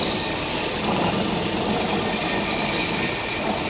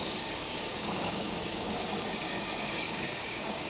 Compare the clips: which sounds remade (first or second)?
second